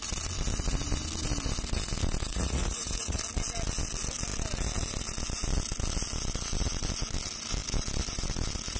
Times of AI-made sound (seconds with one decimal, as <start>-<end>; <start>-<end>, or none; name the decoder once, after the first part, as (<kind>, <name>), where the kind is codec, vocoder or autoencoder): 2.3-3.2 (vocoder, Vocos)